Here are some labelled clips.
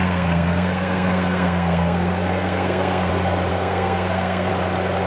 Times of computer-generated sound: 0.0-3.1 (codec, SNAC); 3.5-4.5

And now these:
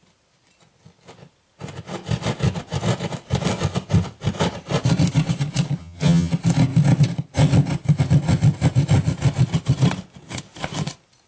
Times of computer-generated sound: 5.8-6.3 (vocoder, HiFi-GAN)

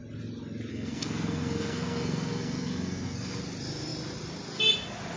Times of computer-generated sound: 0.7-3.4 (codec, SNAC)

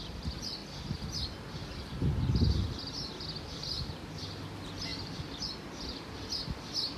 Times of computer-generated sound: 4.9-6.4 (vocoder, BigVGAN v2)

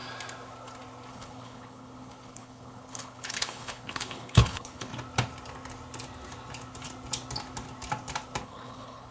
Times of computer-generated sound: 1.1-4.9 (codec, HILCodec); 8.4-9.1